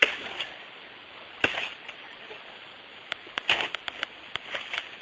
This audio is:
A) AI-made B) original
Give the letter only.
B